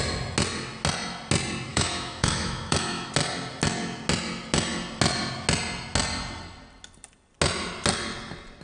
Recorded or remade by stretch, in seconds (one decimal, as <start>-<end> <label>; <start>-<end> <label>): 0.0-1.7 recorded; 1.7-3.1 remade; 3.1-8.6 recorded